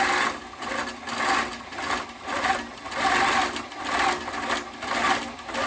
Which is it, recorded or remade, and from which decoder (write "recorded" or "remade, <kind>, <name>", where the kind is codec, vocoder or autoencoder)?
recorded